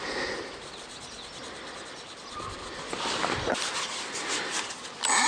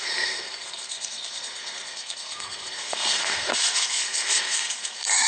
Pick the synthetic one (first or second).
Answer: second